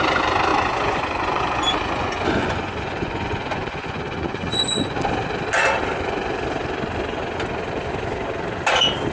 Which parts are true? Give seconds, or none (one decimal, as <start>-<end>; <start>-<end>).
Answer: 0.0-0.5; 5.0-9.1